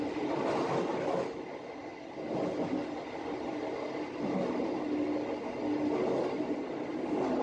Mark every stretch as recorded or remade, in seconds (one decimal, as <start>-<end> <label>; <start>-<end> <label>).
0.0-7.4 recorded